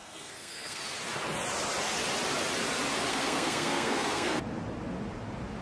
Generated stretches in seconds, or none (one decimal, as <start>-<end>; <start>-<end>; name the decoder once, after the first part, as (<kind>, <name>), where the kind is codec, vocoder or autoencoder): 0.0-0.8 (codec, SNAC); 3.1-4.4